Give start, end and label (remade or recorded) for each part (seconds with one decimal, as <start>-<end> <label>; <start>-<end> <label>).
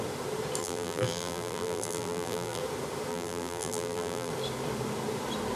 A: 0.0-0.6 recorded; 0.6-2.6 remade; 2.6-3.1 recorded; 3.1-4.3 remade; 4.3-5.6 recorded